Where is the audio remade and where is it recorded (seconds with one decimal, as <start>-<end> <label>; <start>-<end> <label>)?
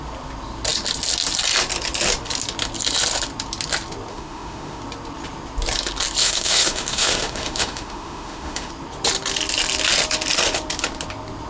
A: 0.0-4.1 recorded; 4.1-4.8 remade; 4.8-6.2 recorded; 6.2-8.7 remade; 8.7-11.5 recorded